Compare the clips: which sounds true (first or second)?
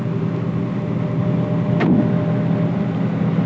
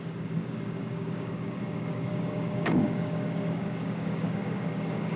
first